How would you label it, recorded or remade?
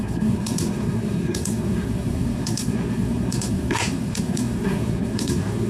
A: remade